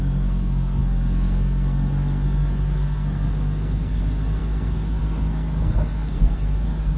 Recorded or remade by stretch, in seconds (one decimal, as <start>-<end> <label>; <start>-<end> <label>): 0.0-7.0 remade